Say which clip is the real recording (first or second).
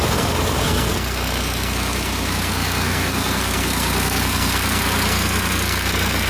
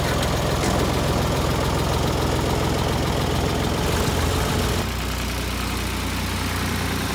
second